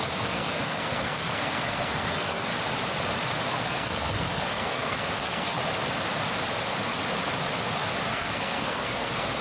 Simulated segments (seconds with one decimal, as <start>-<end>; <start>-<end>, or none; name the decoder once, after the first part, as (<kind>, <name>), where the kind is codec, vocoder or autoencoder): 0.0-2.5 (codec, SNAC); 3.5-5.6; 8.1-9.4